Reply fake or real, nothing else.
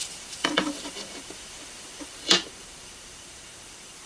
fake